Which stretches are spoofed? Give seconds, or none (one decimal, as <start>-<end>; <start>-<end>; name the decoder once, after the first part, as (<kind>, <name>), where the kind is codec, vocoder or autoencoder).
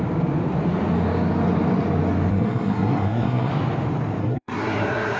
2.3-3.5 (codec, SNAC); 4.2-5.2